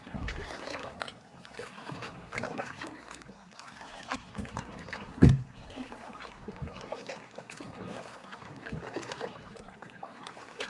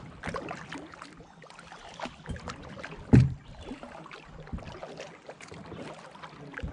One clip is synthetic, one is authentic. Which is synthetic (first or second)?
first